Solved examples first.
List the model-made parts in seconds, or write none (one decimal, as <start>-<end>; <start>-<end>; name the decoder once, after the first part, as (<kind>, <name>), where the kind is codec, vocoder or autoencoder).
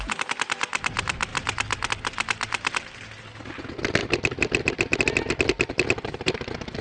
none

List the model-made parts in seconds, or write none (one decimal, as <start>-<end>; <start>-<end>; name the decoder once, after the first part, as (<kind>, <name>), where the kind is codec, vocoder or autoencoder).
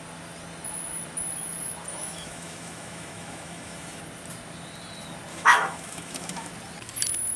1.9-4.0 (autoencoder, DAC-VAE); 5.3-6.5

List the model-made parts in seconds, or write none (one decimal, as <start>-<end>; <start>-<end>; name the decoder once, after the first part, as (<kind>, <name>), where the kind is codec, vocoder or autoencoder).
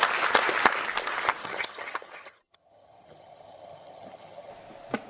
1.4-4.5 (vocoder, HiFi-GAN)